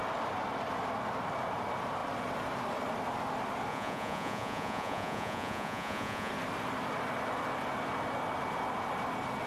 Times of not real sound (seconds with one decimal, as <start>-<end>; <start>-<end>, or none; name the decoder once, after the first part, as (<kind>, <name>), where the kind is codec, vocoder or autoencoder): 3.7-6.3 (vocoder, Vocos)